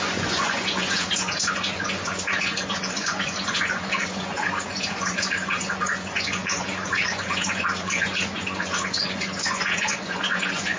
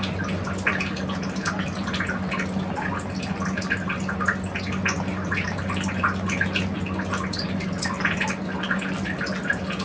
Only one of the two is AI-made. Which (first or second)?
first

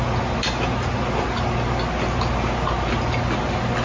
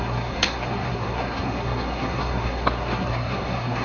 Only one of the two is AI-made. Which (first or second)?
second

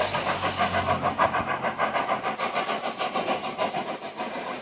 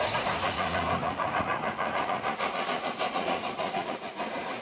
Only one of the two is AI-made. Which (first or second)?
second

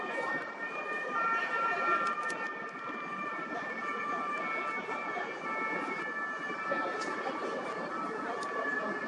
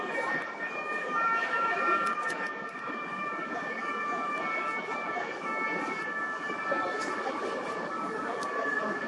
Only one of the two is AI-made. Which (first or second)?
second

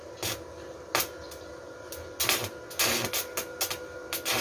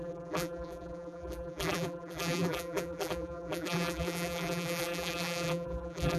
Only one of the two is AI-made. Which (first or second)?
second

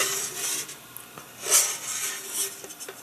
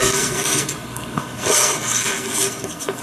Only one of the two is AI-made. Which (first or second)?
second